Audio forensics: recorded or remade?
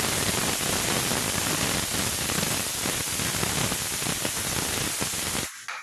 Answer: recorded